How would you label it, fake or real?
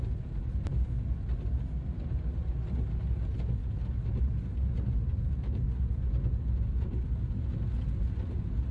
real